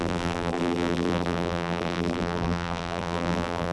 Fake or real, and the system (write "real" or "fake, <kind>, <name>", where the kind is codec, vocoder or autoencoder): fake, vocoder, BigVGAN v2